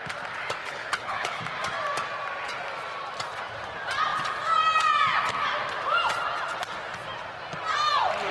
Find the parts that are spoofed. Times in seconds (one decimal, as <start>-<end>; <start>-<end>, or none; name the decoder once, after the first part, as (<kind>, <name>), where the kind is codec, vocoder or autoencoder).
0.6-1.4 (codec, HILCodec)